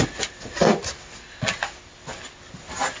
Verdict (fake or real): real